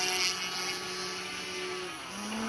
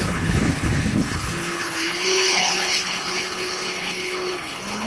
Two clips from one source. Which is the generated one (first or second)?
second